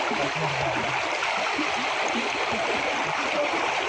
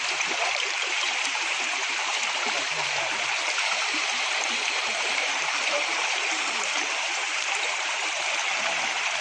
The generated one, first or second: second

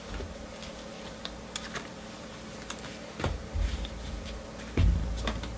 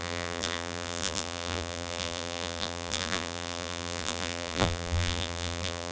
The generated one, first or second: second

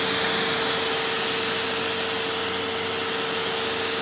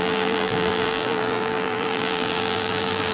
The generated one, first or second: second